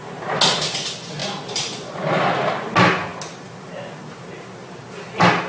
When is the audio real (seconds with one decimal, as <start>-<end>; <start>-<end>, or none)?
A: 0.0-5.5